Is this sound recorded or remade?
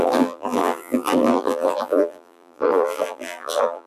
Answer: remade